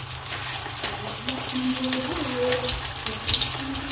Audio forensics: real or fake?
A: real